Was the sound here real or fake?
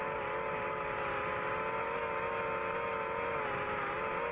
real